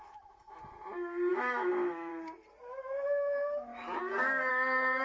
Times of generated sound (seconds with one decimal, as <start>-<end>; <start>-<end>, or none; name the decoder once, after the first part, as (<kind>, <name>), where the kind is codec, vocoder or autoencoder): 0.0-0.6 (autoencoder, DAC-VAE); 1.3-2.1; 2.6-3.7; 4.5-5.0